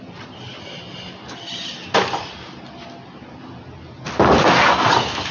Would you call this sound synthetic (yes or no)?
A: no